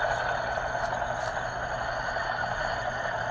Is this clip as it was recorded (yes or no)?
yes